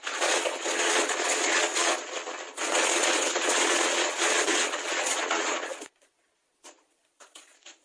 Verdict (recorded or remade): remade